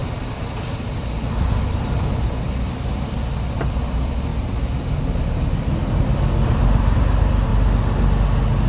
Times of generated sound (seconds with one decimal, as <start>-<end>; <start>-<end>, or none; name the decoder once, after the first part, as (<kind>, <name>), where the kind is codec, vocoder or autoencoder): 0.0-7.5 (vocoder, BigVGAN v2)